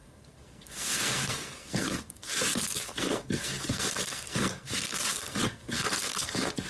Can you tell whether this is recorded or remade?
remade